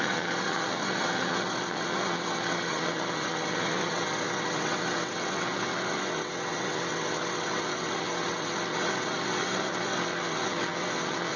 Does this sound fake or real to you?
fake